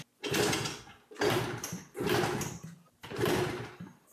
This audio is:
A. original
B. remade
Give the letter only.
A